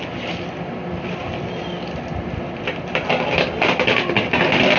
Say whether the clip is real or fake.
real